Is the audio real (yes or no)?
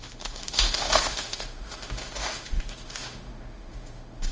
no